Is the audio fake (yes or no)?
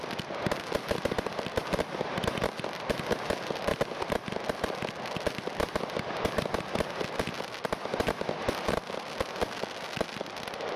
no